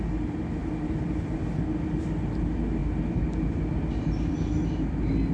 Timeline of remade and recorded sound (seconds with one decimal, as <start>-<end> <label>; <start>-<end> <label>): 0.0-5.3 recorded